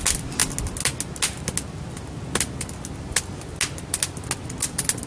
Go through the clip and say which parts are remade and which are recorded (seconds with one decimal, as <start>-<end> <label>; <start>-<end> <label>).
0.0-5.1 recorded